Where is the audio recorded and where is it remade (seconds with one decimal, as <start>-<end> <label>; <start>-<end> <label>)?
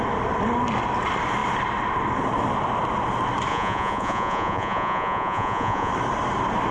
0.0-3.5 recorded; 3.5-5.9 remade; 5.9-6.7 recorded